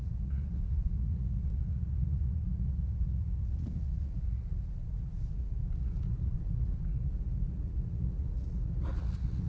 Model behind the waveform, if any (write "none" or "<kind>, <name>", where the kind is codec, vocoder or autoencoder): vocoder, Vocos